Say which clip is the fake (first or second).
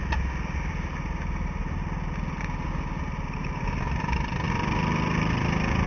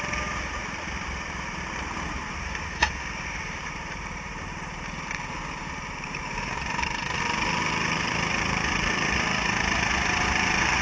second